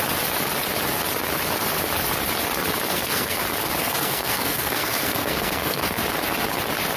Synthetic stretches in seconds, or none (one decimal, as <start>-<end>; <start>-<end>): 2.9-3.4; 3.8-6.0